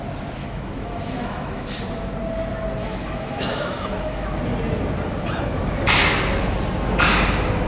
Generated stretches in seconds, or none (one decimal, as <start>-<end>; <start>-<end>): 0.4-1.8; 2.8-4.4